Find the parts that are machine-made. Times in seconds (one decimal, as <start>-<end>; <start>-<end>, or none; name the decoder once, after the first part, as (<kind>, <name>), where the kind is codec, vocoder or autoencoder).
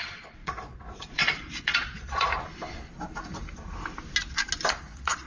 0.0-2.3 (vocoder, Vocos); 4.7-5.3